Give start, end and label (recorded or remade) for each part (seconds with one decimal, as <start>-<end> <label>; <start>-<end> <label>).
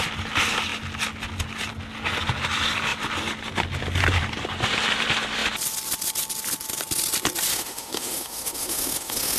0.0-7.5 recorded; 7.5-9.4 remade